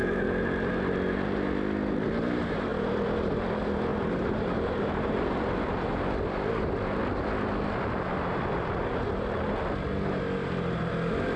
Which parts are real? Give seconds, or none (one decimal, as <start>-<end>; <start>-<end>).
0.7-3.9; 6.0-11.4